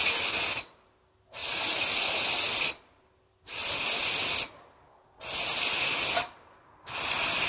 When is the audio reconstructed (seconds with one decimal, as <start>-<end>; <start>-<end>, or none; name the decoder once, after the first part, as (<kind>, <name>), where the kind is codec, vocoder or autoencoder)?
none